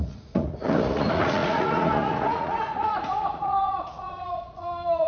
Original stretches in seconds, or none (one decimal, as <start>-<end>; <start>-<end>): none